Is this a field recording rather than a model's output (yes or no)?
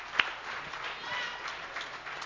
yes